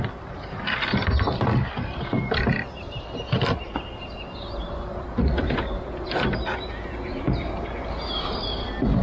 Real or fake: real